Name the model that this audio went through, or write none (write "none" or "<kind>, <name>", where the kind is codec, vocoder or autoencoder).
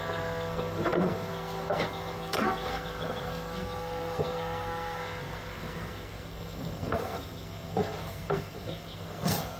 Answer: codec, SNAC